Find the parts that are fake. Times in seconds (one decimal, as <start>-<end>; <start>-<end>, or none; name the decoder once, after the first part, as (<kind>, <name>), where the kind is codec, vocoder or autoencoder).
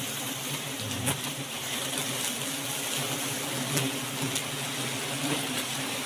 0.0-2.0 (vocoder, BigVGAN v2); 5.2-6.1